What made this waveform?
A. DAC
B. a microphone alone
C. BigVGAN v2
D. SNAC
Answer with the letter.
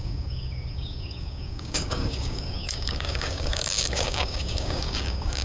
A